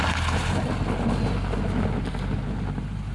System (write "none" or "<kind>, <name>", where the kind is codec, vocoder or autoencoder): none